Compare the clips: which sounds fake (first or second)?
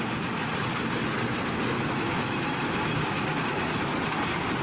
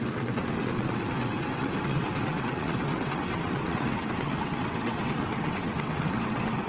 second